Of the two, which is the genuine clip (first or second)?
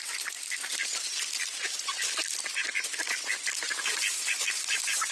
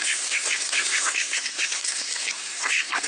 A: first